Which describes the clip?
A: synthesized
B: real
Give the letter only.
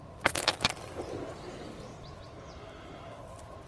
B